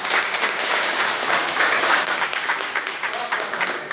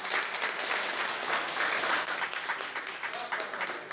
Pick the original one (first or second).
second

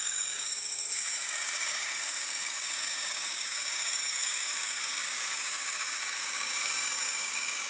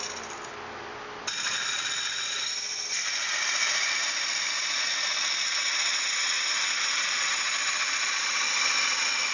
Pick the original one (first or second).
second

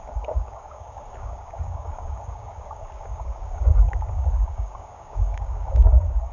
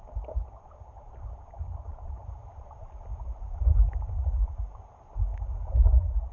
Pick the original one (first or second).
second